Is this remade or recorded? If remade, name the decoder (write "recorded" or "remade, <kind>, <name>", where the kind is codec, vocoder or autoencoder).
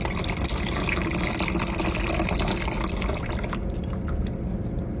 recorded